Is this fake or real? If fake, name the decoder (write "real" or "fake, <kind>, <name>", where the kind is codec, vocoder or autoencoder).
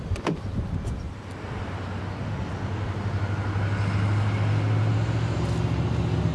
real